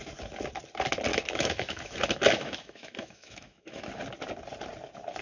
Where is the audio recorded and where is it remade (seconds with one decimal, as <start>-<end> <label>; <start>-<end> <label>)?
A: 0.0-1.1 recorded; 1.1-3.8 remade; 3.8-5.2 recorded